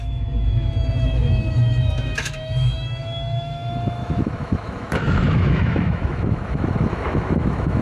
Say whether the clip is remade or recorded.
remade